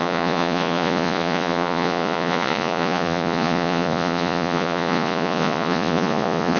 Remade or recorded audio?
remade